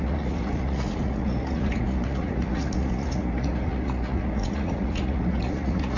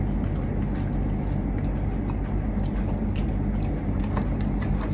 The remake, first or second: first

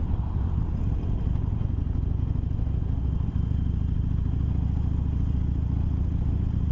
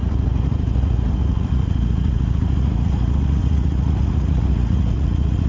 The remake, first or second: second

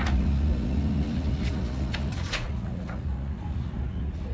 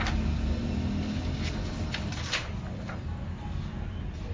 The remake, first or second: first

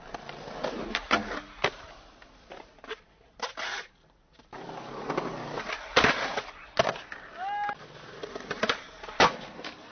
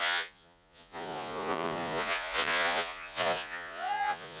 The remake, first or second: second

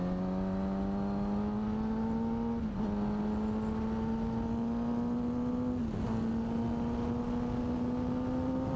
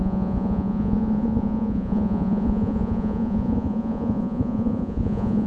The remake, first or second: second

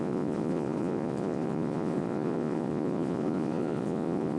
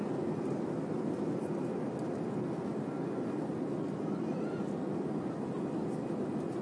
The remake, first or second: first